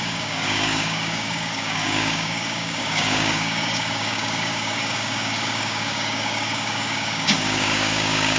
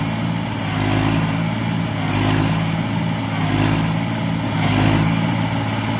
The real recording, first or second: second